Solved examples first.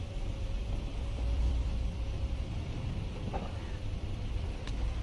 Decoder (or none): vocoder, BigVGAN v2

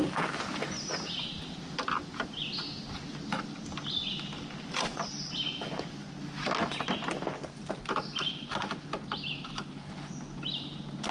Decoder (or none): none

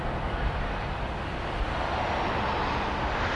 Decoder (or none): none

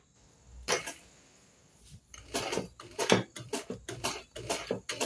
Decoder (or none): none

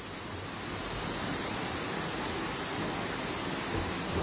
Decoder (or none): none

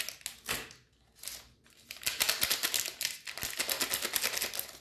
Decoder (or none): none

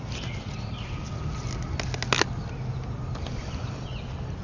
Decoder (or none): none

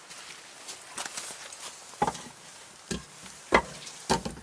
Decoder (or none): none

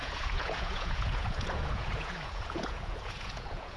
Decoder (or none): vocoder, Vocos